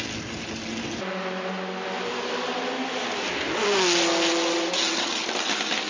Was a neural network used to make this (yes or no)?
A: no